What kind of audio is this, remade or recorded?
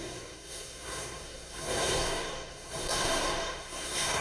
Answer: remade